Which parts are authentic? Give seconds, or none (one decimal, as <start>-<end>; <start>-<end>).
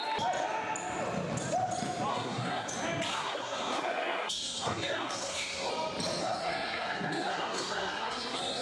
0.0-2.1; 2.7-3.1; 5.7-6.2